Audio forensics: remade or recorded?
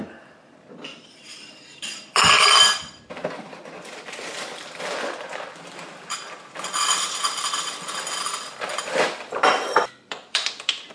remade